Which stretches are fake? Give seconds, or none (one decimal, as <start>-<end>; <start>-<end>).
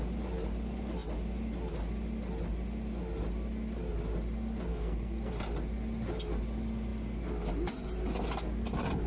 4.7-5.3